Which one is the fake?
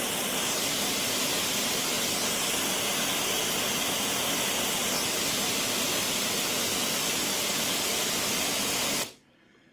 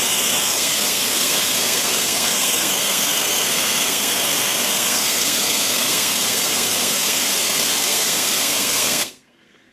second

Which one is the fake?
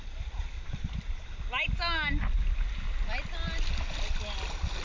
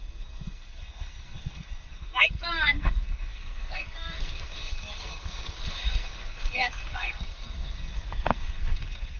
second